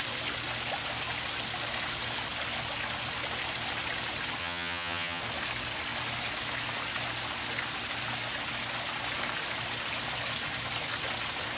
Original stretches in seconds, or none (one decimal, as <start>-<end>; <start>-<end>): 0.0-4.4; 5.2-11.6

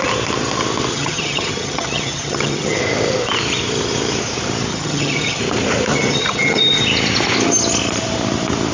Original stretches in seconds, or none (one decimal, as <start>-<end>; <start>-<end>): 0.0-0.9; 2.8-4.7; 5.4-5.9; 6.8-8.7